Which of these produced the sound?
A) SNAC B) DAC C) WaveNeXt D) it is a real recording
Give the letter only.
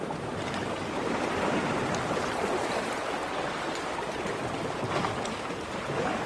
D